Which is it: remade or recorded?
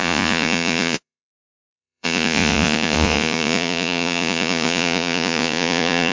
remade